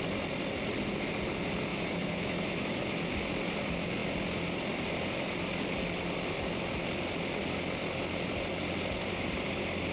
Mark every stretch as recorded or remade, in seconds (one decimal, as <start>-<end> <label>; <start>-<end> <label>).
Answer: 0.0-1.7 recorded; 1.7-2.8 remade; 2.8-9.9 recorded